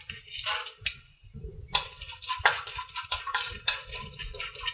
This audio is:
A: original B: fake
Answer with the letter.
B